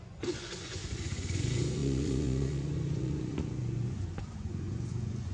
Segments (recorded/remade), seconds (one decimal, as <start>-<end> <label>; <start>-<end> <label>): 0.0-5.3 remade